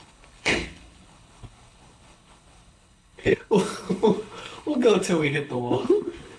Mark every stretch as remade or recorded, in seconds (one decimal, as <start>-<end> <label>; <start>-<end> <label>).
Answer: 0.0-6.4 remade